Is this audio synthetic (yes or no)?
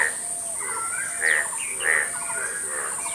no